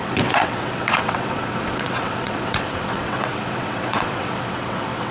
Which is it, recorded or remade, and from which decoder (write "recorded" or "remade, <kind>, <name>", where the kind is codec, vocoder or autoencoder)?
remade, vocoder, WaveNeXt